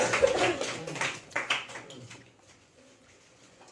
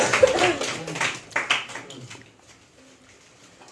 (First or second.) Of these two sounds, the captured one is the second